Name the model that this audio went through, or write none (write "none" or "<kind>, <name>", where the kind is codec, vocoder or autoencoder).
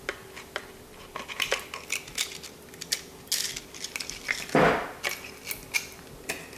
none